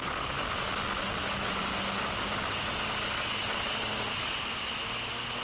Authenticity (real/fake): real